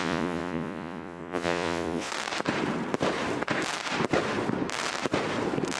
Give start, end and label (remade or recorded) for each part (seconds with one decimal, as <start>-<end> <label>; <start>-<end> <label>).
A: 0.0-2.1 remade; 2.1-5.8 recorded